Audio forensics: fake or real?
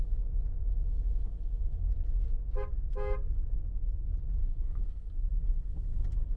real